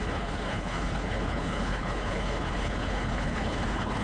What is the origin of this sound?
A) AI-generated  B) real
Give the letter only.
A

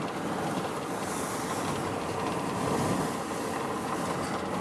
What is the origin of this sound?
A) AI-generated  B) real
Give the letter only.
B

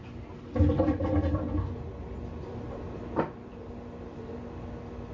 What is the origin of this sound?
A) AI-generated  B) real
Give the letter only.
B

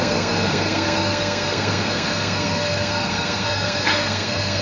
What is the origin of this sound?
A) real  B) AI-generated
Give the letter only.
B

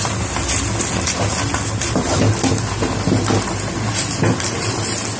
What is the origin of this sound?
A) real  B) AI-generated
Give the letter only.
A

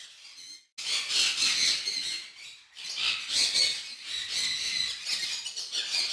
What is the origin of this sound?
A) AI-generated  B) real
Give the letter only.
B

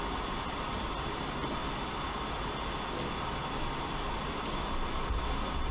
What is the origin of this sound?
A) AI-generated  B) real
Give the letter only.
B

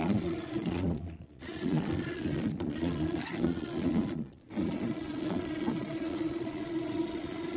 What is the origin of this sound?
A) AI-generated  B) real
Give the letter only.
A